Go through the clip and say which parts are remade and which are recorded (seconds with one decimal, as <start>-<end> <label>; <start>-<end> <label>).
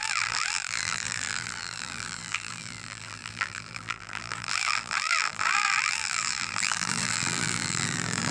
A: 0.0-8.3 remade